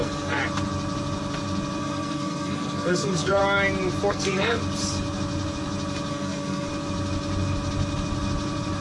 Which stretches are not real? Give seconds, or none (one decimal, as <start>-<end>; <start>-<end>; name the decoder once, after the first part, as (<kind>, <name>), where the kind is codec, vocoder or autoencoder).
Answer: 0.0-0.4 (codec, SNAC); 1.8-3.4; 4.1-4.6; 6.1-6.7